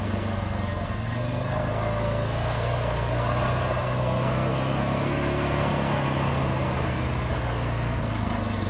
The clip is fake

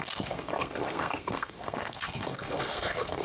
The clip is fake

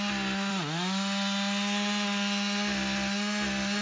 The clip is real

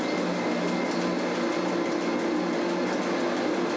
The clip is real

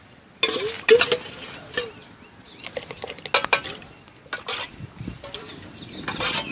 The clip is real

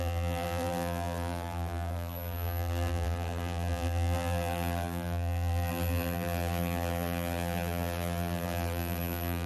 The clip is fake